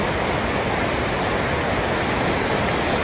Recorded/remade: recorded